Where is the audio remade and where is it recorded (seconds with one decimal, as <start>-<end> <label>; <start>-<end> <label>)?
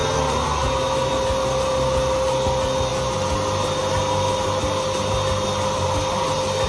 0.0-6.7 recorded